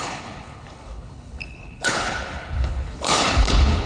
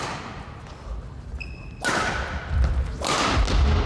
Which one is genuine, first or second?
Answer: second